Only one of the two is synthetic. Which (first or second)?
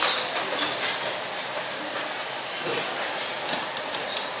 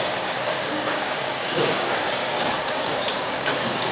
second